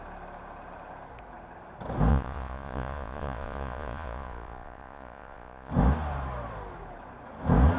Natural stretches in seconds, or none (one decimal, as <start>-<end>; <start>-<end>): 0.0-2.1; 5.7-7.8